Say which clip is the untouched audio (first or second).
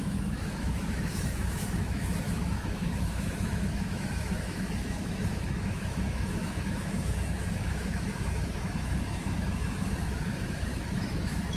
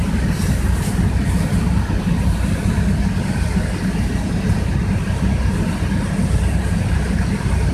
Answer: second